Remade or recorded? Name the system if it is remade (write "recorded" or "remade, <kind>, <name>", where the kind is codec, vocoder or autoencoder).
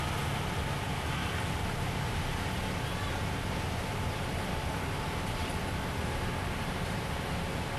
recorded